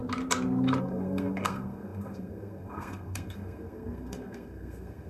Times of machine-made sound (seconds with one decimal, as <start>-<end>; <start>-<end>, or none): 0.8-5.1